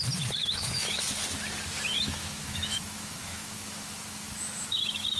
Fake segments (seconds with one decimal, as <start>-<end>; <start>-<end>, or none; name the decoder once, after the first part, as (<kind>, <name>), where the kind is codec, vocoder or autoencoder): 0.4-1.0 (autoencoder, DAC-VAE); 1.9-5.2

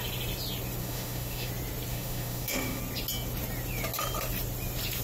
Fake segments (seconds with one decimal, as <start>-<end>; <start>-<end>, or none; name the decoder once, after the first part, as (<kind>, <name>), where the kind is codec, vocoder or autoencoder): 0.8-1.5 (autoencoder, DAC-VAE); 1.9-2.8

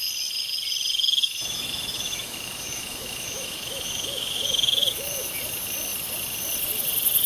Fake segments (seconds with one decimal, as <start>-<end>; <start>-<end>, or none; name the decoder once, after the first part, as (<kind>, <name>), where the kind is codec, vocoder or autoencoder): 1.2-5.4 (autoencoder, DAC-VAE)

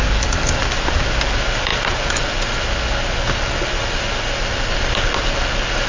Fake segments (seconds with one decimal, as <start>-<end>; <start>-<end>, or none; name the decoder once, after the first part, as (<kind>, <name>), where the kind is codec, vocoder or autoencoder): none